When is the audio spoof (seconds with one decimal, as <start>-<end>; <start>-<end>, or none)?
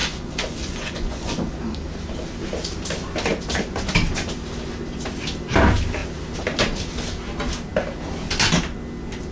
0.0-1.6